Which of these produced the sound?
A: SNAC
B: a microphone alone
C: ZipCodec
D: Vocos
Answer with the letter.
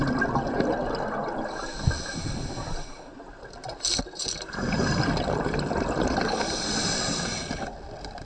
B